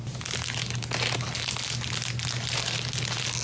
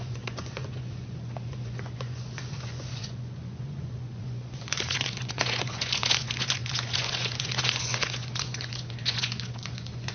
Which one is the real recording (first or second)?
first